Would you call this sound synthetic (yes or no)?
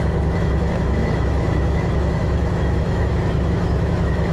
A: yes